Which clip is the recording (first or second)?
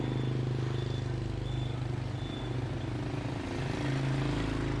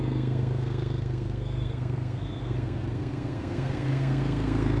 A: first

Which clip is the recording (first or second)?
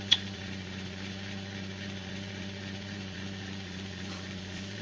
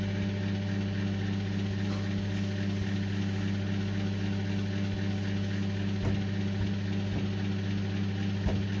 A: second